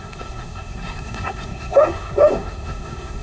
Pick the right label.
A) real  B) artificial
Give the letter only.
B